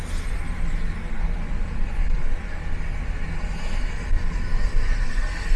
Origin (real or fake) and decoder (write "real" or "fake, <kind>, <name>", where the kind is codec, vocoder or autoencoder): real